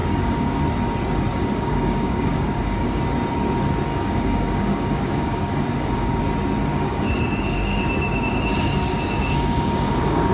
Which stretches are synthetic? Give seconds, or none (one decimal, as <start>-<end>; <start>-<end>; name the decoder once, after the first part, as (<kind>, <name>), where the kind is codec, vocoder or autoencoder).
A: 0.0-0.6 (codec, DAC); 1.3-3.0; 3.9-6.2; 6.7-10.3